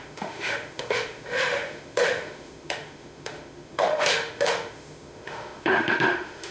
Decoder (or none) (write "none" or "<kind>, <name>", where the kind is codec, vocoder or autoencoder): autoencoder, DAC-VAE